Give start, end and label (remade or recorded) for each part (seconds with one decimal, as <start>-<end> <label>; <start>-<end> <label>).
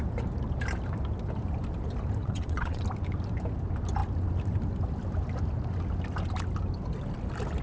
0.0-2.2 recorded; 2.2-2.8 remade; 2.8-7.6 recorded